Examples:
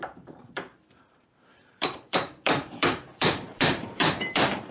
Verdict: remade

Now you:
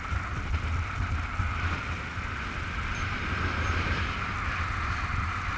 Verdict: recorded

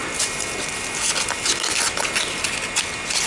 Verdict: recorded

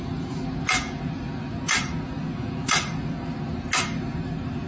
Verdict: recorded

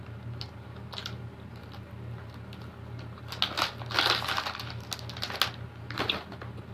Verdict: recorded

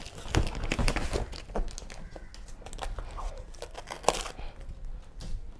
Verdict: recorded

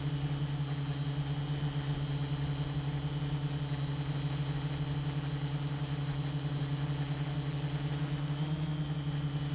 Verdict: recorded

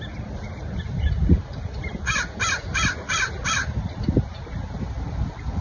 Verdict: remade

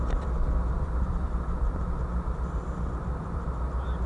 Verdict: remade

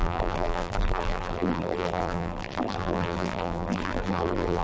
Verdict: remade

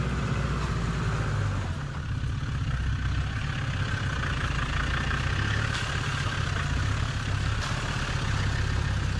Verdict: recorded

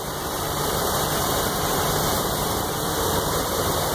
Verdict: remade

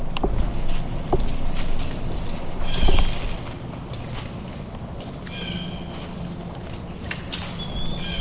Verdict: recorded